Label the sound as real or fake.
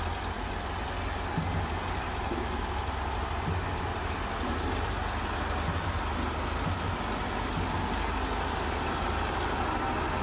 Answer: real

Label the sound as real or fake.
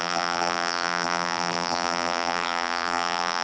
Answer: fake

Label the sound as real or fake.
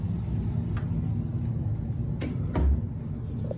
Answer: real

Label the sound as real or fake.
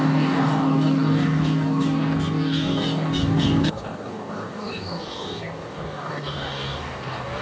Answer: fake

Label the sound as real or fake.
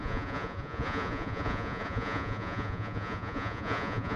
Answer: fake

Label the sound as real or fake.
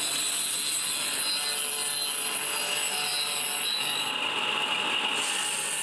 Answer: real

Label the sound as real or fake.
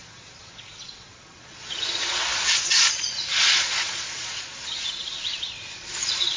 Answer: fake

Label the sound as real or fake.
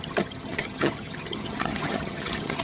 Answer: fake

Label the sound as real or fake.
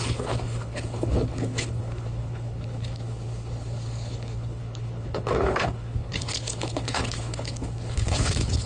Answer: fake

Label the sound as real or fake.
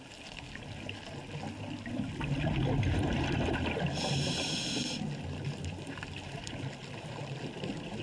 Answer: real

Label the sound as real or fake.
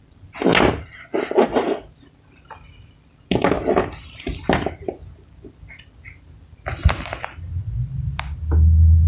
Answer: real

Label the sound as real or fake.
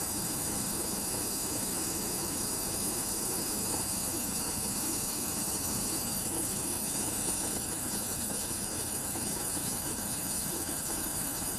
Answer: fake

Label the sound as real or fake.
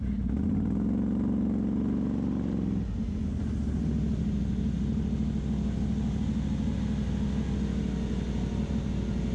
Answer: real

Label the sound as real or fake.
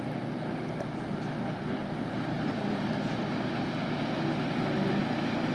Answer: real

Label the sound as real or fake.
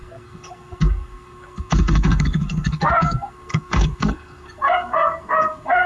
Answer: fake